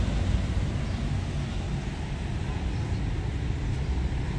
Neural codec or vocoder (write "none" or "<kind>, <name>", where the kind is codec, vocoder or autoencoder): none